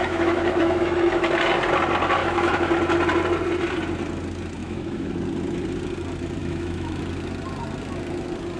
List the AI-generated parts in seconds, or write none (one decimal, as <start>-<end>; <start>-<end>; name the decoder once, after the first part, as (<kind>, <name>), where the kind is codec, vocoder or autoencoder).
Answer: 0.0-1.3 (autoencoder, DAC-VAE); 2.2-2.7; 4.6-5.1; 6.4-7.0